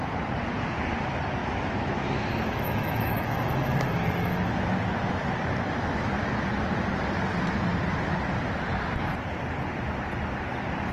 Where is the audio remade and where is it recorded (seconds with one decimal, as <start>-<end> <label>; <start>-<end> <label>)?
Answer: 0.0-1.4 recorded; 1.4-4.5 remade; 4.5-10.9 recorded